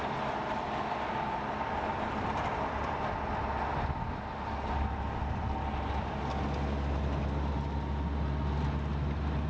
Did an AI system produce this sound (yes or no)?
no